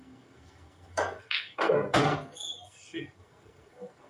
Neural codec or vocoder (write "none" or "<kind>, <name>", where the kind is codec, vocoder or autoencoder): codec, SNAC